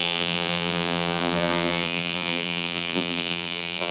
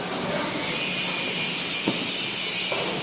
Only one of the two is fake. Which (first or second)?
first